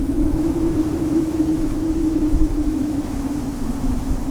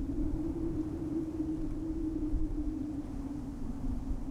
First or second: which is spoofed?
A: first